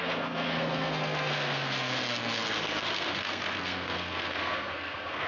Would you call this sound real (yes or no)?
no